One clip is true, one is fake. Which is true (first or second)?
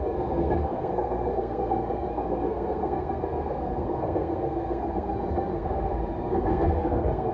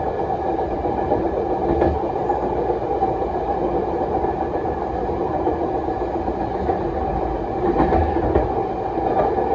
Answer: second